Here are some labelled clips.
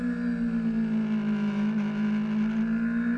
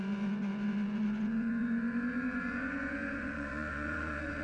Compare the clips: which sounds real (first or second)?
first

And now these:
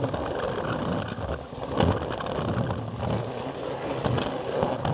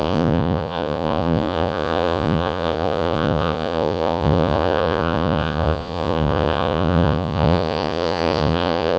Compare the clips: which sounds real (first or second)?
first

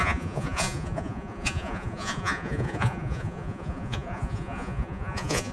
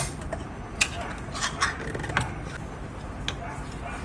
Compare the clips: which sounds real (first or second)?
second